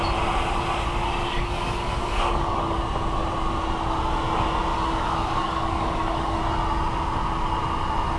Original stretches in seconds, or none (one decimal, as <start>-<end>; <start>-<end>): 0.0-1.2; 2.8-4.7; 6.4-8.2

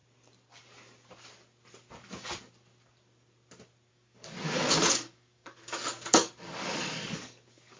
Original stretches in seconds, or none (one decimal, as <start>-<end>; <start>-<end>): 0.0-3.9

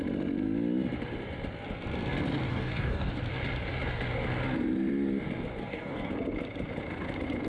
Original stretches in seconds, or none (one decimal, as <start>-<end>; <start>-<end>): 0.0-2.5; 3.1-5.6; 6.1-7.5

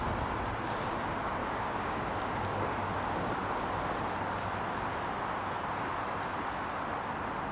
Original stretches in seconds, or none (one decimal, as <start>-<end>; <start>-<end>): 0.0-1.4; 3.6-7.5